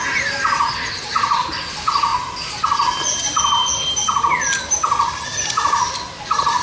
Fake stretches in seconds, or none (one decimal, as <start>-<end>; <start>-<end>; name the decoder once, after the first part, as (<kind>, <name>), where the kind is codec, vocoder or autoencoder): none